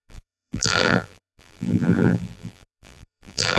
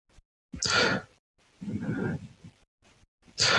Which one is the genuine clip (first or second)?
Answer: second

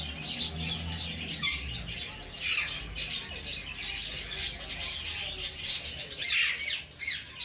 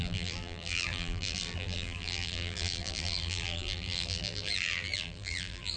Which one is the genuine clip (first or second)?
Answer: first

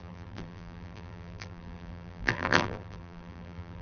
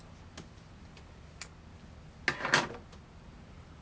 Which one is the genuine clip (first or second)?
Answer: second